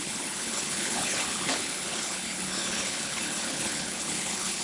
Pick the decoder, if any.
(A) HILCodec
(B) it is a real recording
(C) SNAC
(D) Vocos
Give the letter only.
A